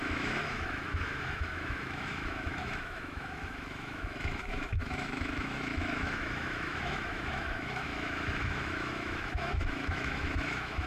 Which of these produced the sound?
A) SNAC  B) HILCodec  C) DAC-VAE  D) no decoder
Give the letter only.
C